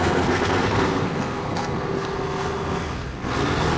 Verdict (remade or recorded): remade